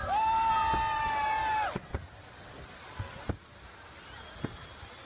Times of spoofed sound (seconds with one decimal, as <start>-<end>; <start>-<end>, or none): 0.0-0.5